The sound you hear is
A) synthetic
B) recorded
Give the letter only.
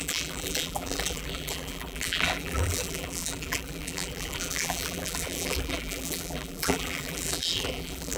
A